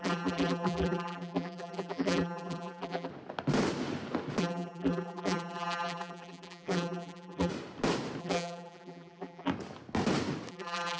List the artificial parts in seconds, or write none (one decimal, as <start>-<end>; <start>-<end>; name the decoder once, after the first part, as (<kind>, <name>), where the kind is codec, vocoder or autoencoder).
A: 0.0-3.1 (vocoder, BigVGAN v2); 4.4-7.5; 8.2-9.5; 10.5-11.0